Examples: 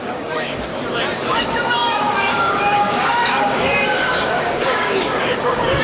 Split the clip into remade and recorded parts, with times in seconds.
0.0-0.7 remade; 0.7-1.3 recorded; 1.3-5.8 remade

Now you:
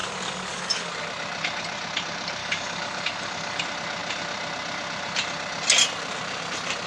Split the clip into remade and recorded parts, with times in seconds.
0.0-0.9 remade; 0.9-2.4 recorded; 2.4-3.6 remade; 3.6-6.9 recorded

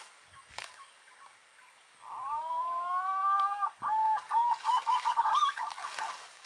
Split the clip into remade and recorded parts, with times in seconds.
0.0-6.5 remade

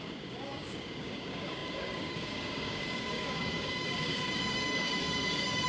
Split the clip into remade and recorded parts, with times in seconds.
0.0-5.7 remade

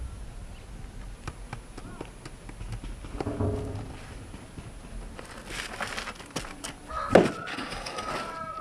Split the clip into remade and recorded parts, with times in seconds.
0.0-7.5 recorded; 7.5-8.1 remade; 8.1-8.6 recorded

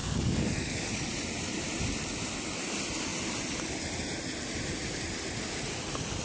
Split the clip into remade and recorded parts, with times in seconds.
0.0-0.9 remade; 0.9-6.2 recorded

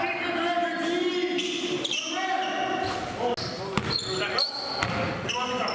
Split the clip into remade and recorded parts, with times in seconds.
0.0-5.7 recorded

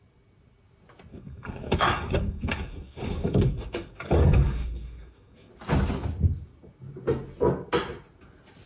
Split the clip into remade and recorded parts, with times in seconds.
0.0-1.1 recorded; 1.1-5.5 remade; 5.5-8.7 recorded